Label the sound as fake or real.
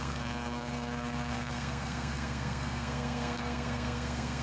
fake